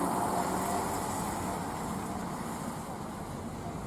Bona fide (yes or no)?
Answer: yes